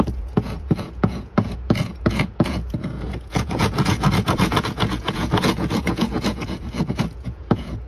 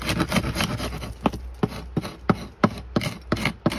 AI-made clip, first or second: first